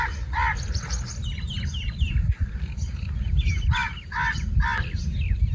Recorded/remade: recorded